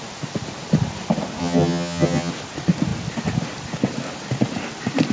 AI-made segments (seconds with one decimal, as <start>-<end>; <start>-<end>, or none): 1.4-2.3